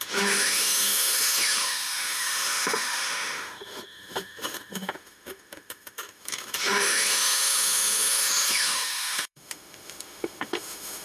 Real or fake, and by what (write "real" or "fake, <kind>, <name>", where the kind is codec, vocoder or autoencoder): fake, autoencoder, DAC-VAE